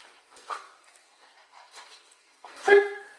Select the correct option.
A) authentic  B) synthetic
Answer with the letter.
B